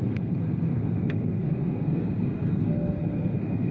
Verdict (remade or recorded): remade